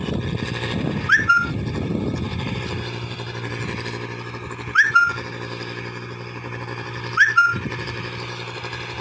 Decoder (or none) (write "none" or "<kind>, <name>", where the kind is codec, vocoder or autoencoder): none